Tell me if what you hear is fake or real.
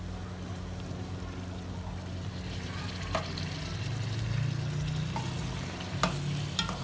real